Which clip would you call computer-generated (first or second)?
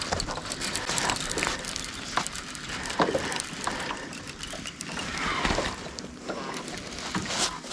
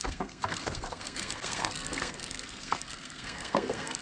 second